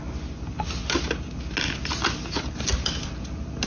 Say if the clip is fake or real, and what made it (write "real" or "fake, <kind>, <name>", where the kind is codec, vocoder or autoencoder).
real